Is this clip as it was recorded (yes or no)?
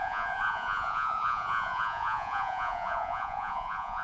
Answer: no